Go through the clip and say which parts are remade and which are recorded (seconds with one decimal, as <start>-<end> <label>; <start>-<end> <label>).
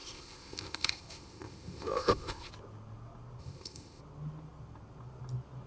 0.0-2.5 remade; 2.5-3.4 recorded; 3.4-4.0 remade; 4.0-5.7 recorded